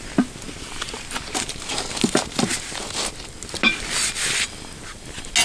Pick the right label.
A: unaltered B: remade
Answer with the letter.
A